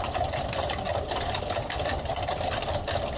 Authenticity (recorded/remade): recorded